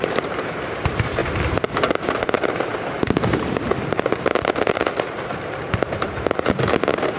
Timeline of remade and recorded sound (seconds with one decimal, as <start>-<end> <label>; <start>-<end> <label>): 0.0-1.2 remade; 1.2-3.2 recorded; 3.2-3.7 remade; 3.7-4.7 recorded; 4.7-7.2 remade